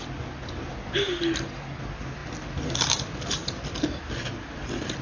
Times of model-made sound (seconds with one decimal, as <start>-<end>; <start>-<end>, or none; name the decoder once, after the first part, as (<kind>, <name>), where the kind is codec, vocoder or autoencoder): none